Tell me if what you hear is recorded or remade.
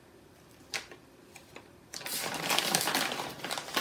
remade